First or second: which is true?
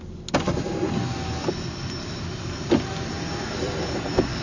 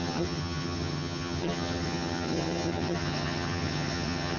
first